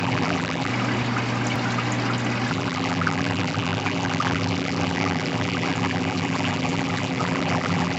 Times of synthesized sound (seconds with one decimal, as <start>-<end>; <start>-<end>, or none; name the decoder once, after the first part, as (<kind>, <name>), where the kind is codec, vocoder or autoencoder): 0.0-0.7 (vocoder, BigVGAN v2); 2.5-8.0